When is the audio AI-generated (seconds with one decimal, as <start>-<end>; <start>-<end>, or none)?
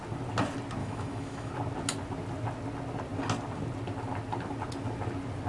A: 0.8-1.5